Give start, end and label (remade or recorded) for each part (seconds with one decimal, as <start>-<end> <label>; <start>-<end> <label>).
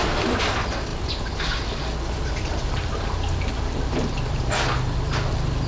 0.0-5.7 recorded